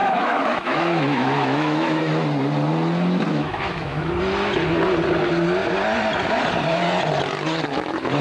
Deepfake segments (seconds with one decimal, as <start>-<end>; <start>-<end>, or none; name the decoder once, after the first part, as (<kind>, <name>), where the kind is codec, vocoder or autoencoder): 0.0-2.0 (autoencoder, DAC-VAE); 3.3-4.1